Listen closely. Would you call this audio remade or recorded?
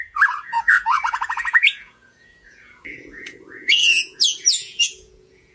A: remade